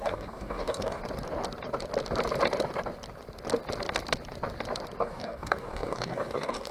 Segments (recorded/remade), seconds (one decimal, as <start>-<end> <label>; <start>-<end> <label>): 0.0-1.0 remade; 1.0-5.0 recorded; 5.0-6.7 remade